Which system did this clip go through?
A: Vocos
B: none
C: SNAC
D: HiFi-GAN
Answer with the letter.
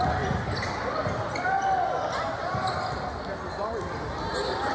B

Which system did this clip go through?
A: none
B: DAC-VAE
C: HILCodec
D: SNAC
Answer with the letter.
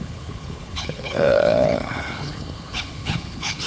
C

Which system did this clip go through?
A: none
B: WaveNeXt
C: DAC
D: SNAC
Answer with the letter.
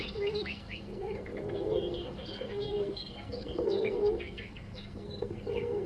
D